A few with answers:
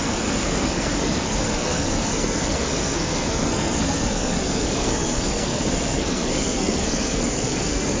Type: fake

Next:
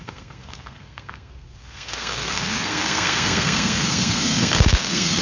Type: fake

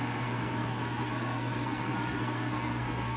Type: fake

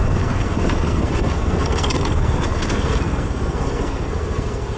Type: fake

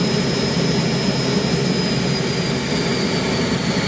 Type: real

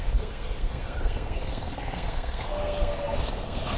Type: fake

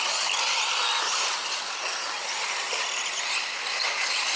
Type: real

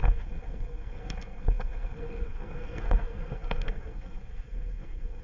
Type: fake